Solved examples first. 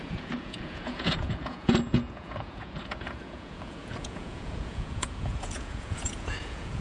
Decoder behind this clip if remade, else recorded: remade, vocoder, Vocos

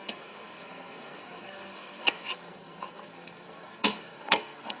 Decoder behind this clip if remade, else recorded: remade, codec, SNAC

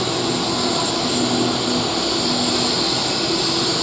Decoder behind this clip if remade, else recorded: recorded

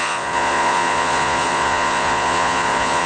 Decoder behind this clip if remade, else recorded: remade, vocoder, Vocos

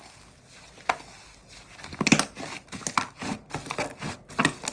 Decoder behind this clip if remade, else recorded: recorded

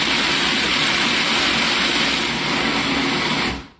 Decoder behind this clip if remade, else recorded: recorded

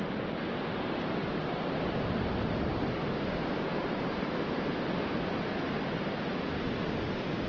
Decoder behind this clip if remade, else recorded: recorded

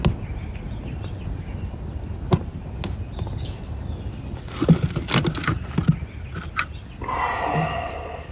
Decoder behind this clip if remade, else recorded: recorded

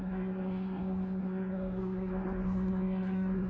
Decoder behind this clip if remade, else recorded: remade, codec, SNAC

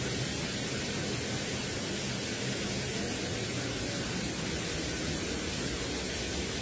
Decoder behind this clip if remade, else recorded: recorded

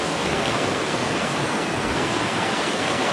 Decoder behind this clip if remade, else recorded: remade, codec, SNAC